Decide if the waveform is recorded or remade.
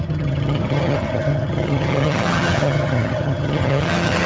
remade